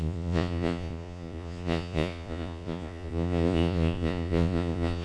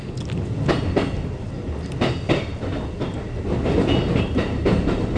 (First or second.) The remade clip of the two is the first